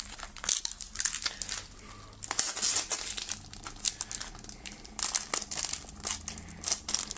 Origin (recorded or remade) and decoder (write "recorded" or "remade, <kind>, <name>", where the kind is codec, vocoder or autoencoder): recorded